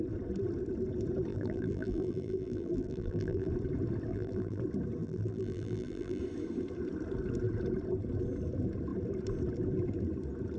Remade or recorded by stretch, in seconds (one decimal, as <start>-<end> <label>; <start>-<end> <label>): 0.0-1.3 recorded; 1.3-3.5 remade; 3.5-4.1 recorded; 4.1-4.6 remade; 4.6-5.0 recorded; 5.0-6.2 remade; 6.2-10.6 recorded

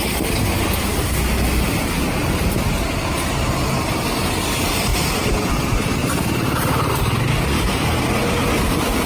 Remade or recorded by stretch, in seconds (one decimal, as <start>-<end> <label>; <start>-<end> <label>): 0.0-6.0 recorded; 6.0-6.9 remade; 6.9-9.1 recorded

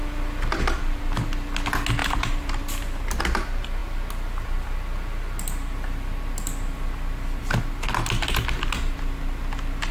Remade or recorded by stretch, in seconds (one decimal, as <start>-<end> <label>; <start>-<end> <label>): 0.0-2.0 recorded; 2.0-3.2 remade; 3.2-9.9 recorded